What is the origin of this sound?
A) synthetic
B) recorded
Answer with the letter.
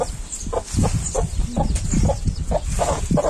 B